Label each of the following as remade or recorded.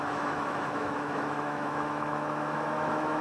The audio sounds remade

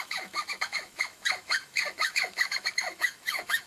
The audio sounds remade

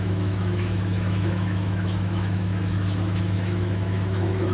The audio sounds remade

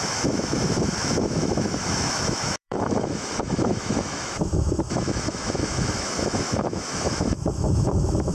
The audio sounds remade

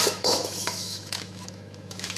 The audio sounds remade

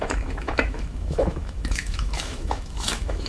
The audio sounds remade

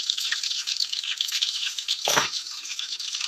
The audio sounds remade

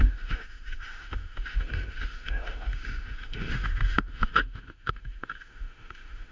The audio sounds remade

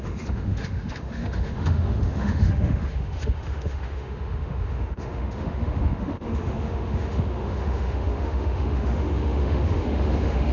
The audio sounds remade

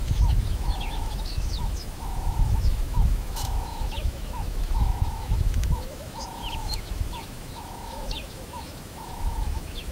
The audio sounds remade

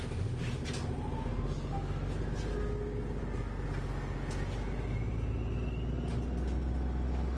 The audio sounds recorded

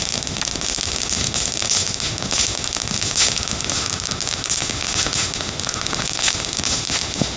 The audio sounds remade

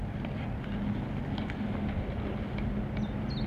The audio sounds recorded